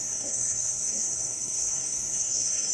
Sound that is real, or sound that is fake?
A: fake